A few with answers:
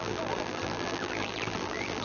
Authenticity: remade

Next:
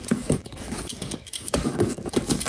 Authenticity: remade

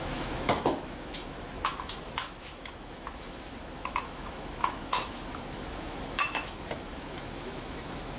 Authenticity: remade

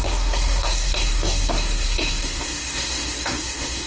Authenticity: remade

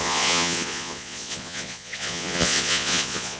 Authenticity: remade